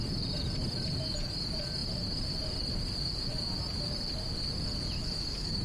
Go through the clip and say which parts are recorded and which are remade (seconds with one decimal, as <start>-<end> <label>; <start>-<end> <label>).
0.0-5.6 recorded